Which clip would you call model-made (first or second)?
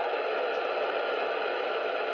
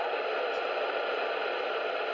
first